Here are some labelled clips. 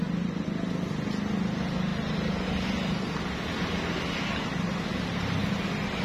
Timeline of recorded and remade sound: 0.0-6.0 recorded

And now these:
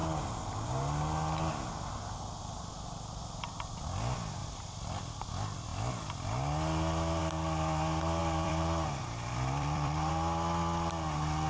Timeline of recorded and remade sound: 0.0-4.4 recorded; 4.4-5.0 remade; 5.0-8.2 recorded; 8.2-10.1 remade; 10.1-11.5 recorded

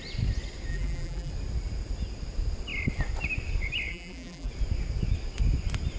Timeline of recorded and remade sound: 0.0-0.7 recorded; 0.7-1.3 remade; 1.3-3.9 recorded; 3.9-4.5 remade; 4.5-6.0 recorded

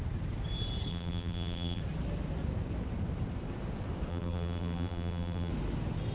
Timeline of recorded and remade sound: 0.0-0.9 recorded; 0.9-1.8 remade; 1.8-4.1 recorded; 4.1-5.5 remade; 5.5-6.1 recorded

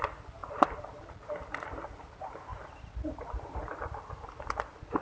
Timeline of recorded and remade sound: 0.0-0.4 recorded; 0.4-1.0 remade; 1.0-2.5 recorded; 2.5-5.0 remade

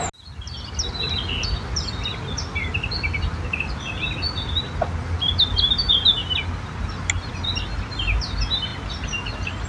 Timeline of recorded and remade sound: 0.0-9.7 recorded